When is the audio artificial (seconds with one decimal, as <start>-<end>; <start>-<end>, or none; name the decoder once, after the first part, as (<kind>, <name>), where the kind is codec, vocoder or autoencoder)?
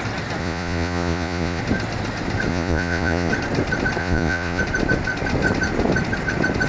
0.4-1.6 (vocoder, Vocos); 2.5-3.3; 4.0-4.6